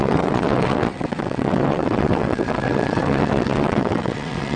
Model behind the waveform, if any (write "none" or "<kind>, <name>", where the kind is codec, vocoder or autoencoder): vocoder, WaveNeXt